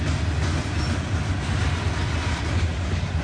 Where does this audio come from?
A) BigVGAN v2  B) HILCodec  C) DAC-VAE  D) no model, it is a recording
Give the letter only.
D